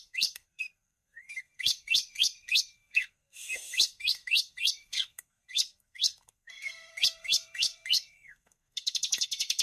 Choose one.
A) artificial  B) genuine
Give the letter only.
A